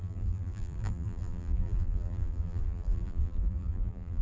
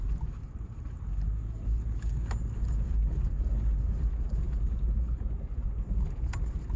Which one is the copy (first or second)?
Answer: first